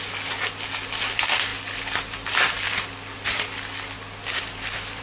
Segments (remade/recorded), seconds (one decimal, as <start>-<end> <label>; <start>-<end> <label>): 0.0-5.0 recorded